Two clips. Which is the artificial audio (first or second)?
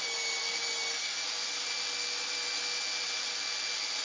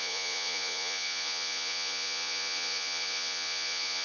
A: second